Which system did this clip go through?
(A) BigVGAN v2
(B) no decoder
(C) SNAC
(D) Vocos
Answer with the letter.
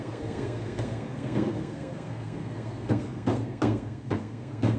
C